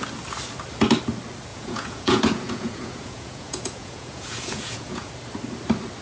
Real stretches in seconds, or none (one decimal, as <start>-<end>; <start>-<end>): 0.0-1.5; 5.1-6.0